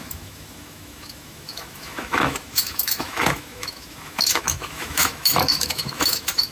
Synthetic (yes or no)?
yes